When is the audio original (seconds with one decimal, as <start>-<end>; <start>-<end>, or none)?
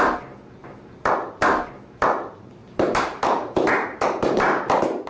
0.0-0.6; 1.1-2.6